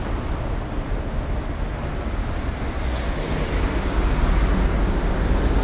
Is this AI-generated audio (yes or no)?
no